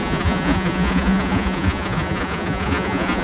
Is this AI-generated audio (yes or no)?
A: yes